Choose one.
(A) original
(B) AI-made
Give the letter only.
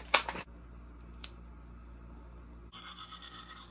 A